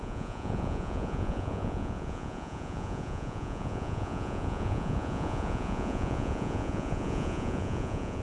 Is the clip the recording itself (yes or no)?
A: no